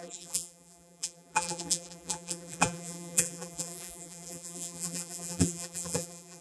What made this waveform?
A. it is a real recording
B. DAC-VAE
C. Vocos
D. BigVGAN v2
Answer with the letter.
D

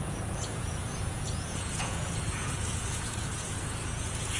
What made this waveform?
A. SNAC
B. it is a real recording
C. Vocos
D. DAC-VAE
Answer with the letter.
C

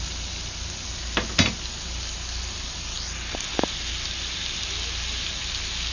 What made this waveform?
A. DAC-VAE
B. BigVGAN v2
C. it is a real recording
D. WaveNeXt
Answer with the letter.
C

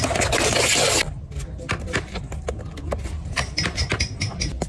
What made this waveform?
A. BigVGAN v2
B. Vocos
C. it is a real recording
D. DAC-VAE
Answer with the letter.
C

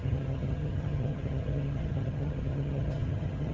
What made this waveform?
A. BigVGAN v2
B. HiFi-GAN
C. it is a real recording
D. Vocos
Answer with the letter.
B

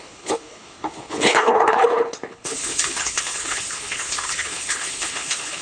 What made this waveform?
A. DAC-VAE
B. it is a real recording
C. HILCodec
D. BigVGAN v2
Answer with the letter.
C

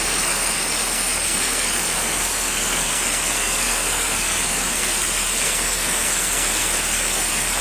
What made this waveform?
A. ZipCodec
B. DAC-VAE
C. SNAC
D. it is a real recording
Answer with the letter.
C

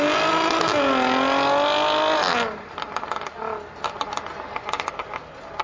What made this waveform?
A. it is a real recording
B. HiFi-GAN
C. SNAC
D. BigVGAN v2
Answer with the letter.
A